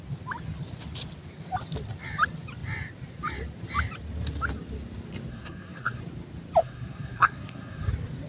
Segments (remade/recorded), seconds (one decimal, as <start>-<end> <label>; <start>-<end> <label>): 0.0-5.3 recorded; 5.3-6.0 remade; 6.0-6.6 recorded; 6.6-7.9 remade; 7.9-8.3 recorded